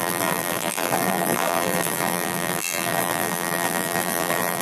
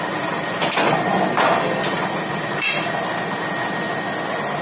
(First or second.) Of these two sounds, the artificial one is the first